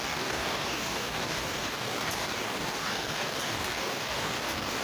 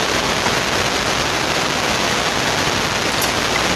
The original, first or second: second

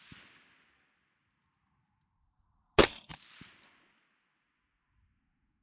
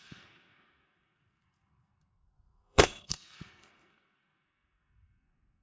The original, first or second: first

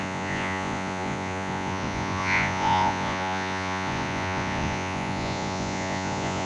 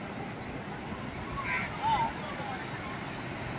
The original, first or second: second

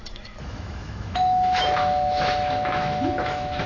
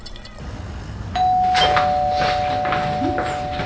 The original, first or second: second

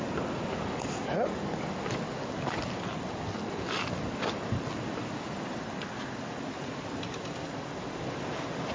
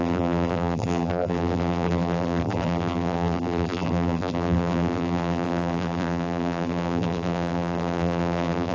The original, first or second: first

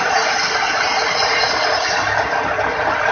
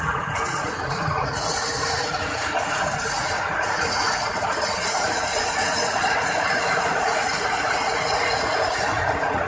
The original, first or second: first